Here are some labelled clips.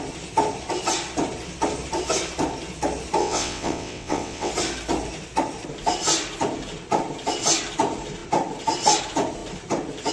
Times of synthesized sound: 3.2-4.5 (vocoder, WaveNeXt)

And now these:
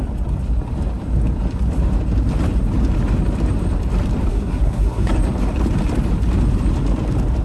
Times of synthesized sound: 4.3-5.1 (codec, SNAC)

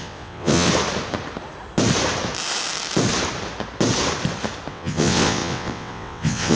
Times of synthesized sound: 0.0-0.7 (vocoder, WaveNeXt); 4.7-6.6

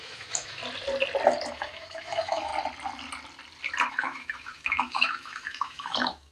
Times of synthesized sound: 0.0-0.6 (autoencoder, DAC-VAE); 1.5-2.5; 3.9-6.3

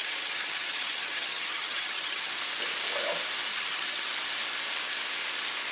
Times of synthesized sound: 0.0-2.3 (vocoder, HiFi-GAN); 3.5-4.1

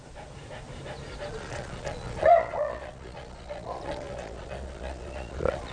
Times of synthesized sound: 1.3-5.7 (vocoder, Vocos)